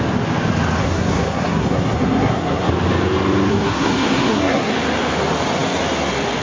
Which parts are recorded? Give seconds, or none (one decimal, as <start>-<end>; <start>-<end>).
0.0-0.8; 2.7-3.5; 4.7-6.4

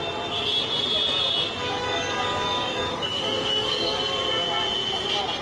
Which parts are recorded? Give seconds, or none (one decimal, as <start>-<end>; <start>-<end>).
0.0-1.6; 4.0-5.4

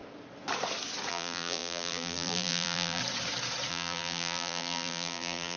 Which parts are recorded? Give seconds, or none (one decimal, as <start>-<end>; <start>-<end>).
0.0-1.1; 3.0-3.7